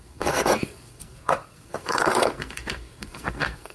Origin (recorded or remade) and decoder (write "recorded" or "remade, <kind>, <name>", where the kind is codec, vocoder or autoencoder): remade, codec, SNAC